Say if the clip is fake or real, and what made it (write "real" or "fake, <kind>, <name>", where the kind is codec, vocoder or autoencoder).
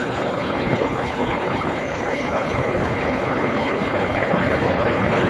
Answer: fake, codec, HILCodec